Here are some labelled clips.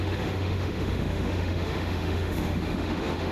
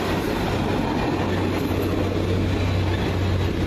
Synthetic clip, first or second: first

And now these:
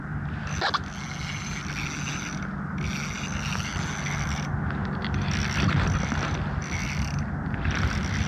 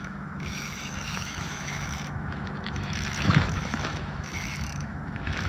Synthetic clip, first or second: second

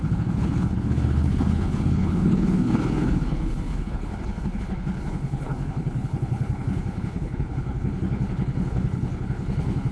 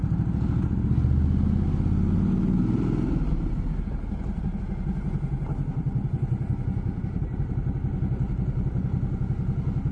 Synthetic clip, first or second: first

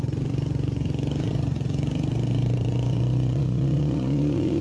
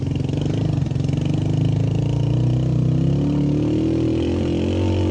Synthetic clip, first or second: first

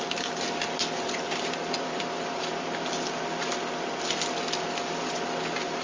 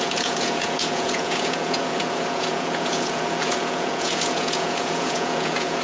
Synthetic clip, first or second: second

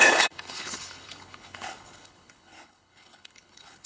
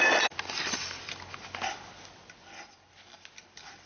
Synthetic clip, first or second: first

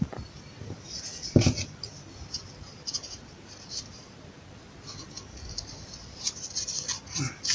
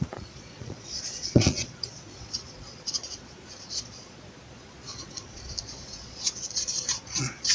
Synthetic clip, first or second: second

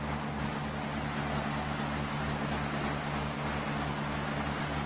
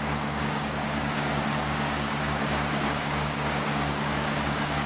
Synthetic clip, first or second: second